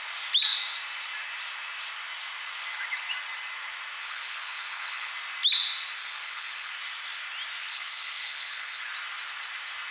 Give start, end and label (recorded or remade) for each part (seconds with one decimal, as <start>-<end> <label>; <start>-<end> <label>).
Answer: 0.0-4.0 recorded; 4.0-5.1 remade; 5.1-6.0 recorded; 6.0-6.7 remade; 6.7-7.7 recorded; 7.7-8.8 remade; 8.8-9.9 recorded